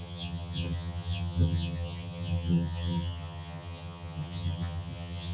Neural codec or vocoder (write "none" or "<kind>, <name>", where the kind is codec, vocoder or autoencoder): vocoder, HiFi-GAN